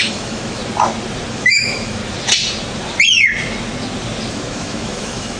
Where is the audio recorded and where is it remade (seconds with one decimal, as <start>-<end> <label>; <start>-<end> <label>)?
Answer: 0.0-0.6 remade; 0.6-1.3 recorded; 1.3-2.0 remade; 2.0-4.3 recorded; 4.3-5.4 remade